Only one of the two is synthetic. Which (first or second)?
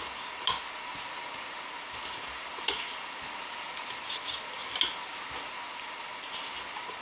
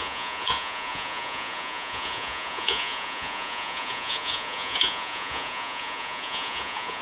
second